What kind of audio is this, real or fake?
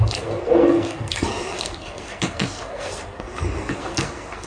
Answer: fake